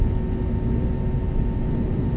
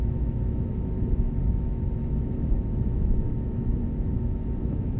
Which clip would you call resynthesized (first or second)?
second